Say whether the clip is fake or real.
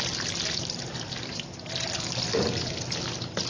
real